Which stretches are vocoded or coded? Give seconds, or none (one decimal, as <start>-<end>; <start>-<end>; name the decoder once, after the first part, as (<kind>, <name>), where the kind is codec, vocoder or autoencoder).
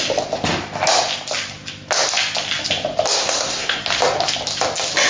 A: 3.2-3.8 (codec, SNAC)